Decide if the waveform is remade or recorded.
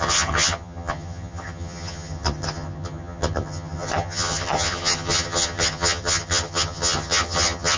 remade